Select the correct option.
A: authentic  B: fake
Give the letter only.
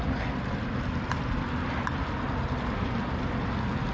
A